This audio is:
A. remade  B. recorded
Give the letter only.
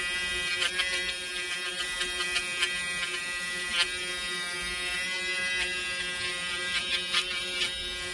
B